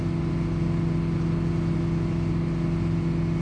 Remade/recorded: recorded